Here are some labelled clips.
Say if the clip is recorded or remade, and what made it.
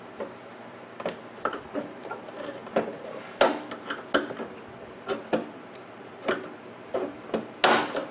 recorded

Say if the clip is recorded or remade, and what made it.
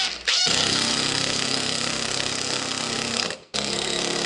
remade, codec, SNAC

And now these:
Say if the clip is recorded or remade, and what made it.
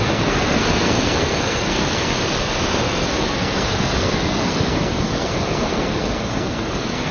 remade, codec, SNAC